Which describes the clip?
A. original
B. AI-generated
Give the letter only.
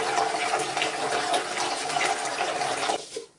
A